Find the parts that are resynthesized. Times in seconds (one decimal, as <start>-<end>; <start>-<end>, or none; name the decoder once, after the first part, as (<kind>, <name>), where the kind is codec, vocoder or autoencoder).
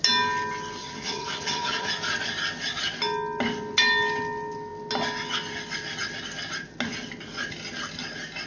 0.8-1.9 (vocoder, HiFi-GAN)